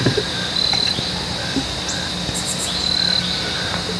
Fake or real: real